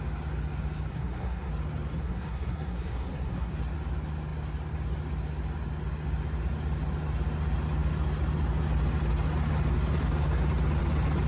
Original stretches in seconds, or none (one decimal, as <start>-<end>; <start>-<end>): 0.0-0.9; 1.5-1.9; 3.5-11.3